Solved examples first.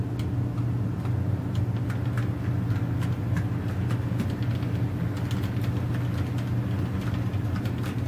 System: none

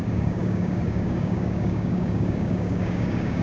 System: codec, DAC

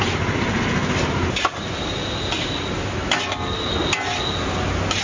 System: none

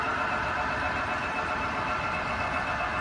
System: none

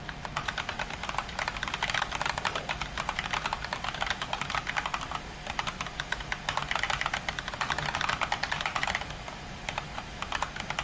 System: none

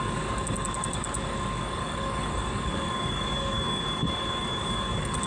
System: codec, DAC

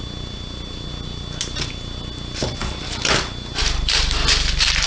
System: none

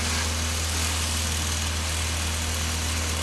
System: none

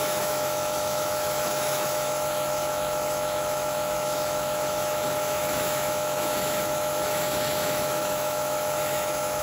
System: autoencoder, DAC-VAE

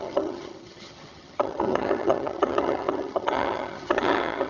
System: vocoder, HiFi-GAN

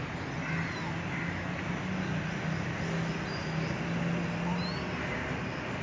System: none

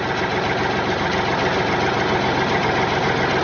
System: none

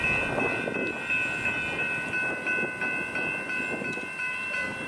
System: none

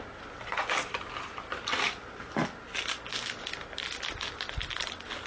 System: none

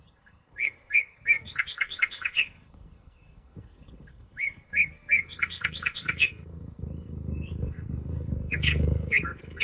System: codec, SNAC